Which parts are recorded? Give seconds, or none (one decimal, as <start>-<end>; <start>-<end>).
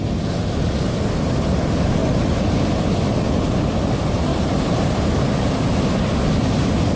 0.0-2.0; 2.8-4.3; 5.5-7.0